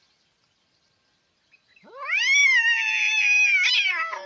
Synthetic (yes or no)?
yes